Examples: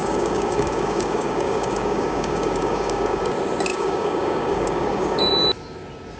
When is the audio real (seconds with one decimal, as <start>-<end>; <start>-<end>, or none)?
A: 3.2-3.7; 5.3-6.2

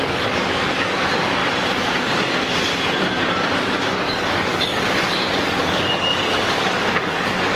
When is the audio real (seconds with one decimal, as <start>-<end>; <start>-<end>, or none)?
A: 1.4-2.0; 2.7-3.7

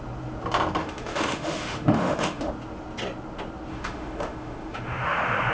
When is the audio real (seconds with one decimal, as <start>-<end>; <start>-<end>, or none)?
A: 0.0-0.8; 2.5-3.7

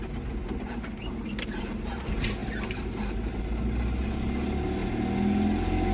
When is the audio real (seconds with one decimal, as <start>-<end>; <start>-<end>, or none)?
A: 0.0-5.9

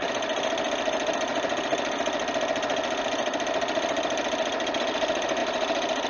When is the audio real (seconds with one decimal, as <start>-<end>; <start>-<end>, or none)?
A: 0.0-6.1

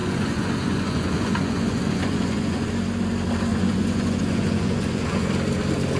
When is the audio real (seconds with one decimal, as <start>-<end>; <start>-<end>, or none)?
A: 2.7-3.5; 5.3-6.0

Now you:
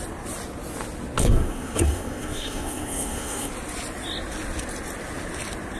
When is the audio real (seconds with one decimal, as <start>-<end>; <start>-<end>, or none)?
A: 0.0-1.2; 3.5-5.8

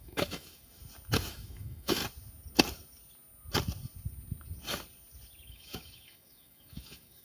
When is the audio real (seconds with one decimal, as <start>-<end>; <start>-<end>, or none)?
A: 0.8-1.3; 2.0-5.5